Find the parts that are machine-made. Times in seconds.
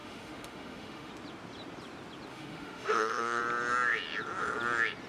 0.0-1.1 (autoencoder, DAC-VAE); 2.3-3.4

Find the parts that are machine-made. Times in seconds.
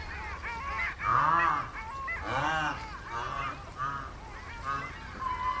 none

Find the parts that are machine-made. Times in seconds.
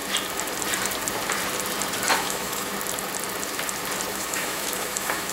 2.1-2.7 (autoencoder, DAC-VAE); 4.1-5.3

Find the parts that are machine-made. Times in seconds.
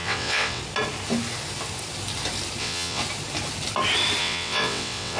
0.0-0.6 (vocoder, WaveNeXt); 2.6-3.0; 4.2-5.2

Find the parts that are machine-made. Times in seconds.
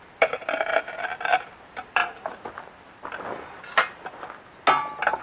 0.0-0.7 (vocoder, BigVGAN v2); 1.3-2.0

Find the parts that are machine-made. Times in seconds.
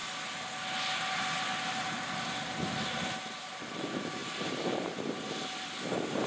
none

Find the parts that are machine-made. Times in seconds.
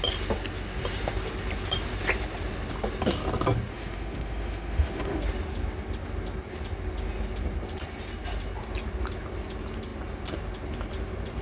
3.7-5.2 (autoencoder, DAC-VAE)